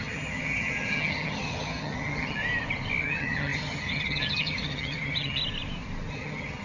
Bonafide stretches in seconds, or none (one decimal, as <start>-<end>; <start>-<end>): 2.4-3.0; 5.4-6.1